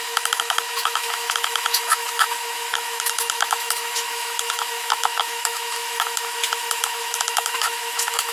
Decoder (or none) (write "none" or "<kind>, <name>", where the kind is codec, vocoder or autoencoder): autoencoder, DAC-VAE